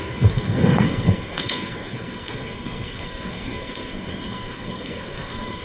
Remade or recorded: remade